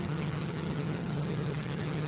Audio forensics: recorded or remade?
remade